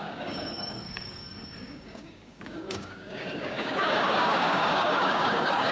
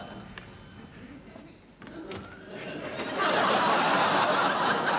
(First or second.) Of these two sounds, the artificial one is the first